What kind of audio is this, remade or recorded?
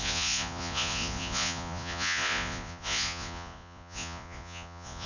remade